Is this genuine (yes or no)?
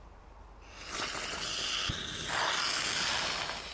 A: yes